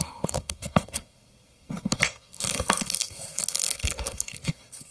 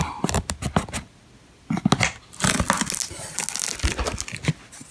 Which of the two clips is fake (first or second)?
first